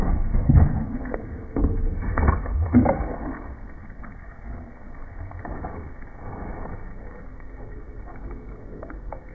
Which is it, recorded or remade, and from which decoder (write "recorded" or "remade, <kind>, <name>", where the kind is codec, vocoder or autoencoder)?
remade, codec, SNAC